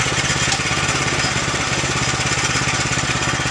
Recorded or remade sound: remade